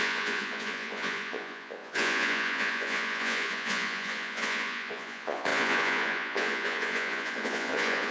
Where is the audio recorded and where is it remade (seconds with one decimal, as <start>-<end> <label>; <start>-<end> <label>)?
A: 0.0-8.1 remade